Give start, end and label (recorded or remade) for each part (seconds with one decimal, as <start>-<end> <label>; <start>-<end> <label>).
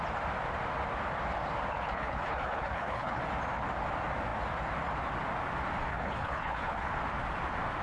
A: 0.0-1.7 recorded; 1.7-3.2 remade; 3.2-5.9 recorded; 5.9-6.9 remade; 6.9-7.8 recorded